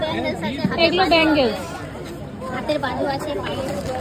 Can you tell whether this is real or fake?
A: fake